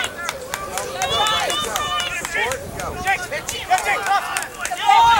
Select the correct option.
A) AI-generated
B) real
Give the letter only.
B